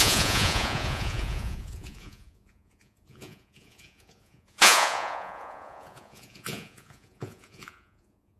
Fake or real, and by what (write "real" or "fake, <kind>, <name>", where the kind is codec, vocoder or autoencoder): fake, vocoder, Vocos